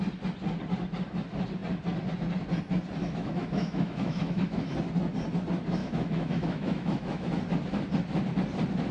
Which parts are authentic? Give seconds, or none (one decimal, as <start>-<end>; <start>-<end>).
0.0-3.0; 4.7-5.8; 7.4-8.9